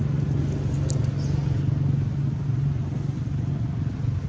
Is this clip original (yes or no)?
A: yes